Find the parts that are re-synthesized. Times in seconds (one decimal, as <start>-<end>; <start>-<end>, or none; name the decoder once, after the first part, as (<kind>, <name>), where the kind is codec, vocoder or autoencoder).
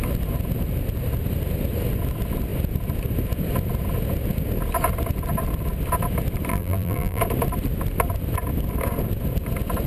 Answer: 6.5-7.2 (vocoder, BigVGAN v2)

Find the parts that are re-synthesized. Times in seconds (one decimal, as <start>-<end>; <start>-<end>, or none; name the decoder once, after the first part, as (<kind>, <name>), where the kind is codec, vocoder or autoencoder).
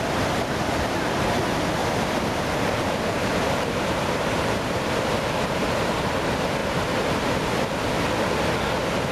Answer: 1.8-6.1 (vocoder, BigVGAN v2); 6.6-7.6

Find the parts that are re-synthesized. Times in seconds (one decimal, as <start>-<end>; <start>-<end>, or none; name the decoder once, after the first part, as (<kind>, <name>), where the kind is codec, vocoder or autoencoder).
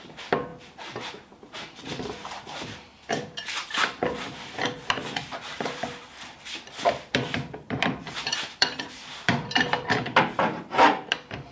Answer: 0.0-6.1 (vocoder, BigVGAN v2); 7.1-11.5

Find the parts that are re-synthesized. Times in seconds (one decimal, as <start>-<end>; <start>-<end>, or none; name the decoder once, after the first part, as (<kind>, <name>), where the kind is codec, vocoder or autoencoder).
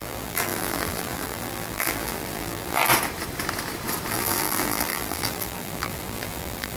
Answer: 0.0-2.9 (vocoder, BigVGAN v2); 4.1-6.8